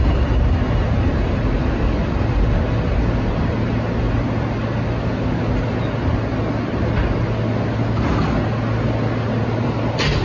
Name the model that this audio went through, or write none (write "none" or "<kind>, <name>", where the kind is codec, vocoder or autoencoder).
none